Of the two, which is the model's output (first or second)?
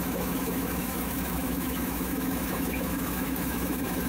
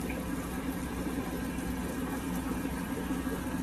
first